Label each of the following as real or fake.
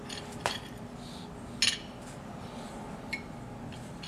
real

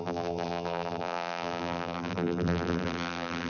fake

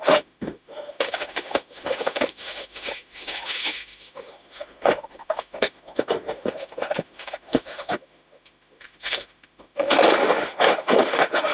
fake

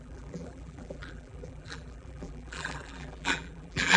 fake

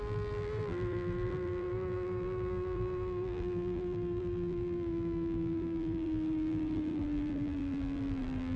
fake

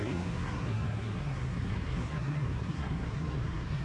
fake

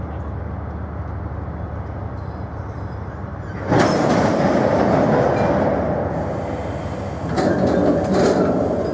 real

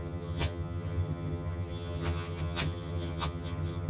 fake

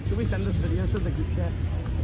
real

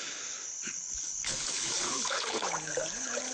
fake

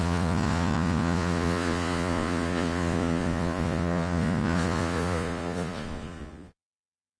fake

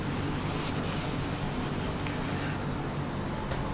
real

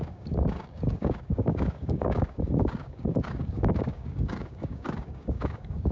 fake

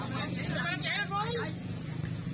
real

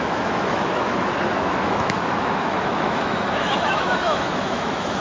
fake